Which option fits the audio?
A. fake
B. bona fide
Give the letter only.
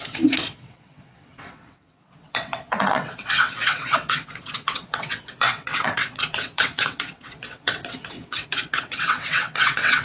A